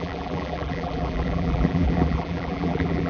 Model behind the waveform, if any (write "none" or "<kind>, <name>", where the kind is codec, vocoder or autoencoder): vocoder, BigVGAN v2